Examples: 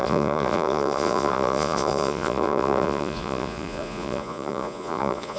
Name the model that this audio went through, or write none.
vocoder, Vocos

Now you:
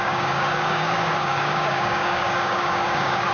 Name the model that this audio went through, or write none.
codec, DAC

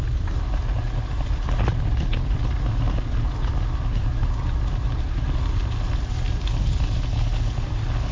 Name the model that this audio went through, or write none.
none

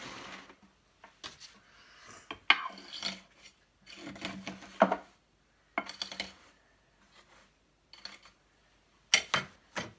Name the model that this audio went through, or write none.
none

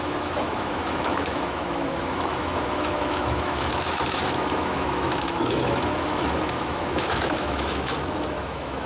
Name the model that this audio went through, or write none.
autoencoder, DAC-VAE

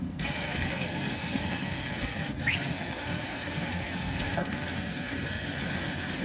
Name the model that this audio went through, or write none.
codec, SNAC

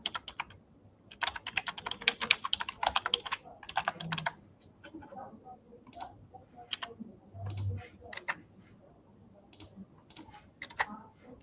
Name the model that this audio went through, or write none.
none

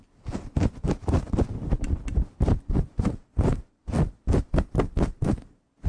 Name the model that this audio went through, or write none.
none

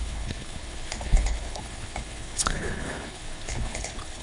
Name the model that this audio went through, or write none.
codec, HILCodec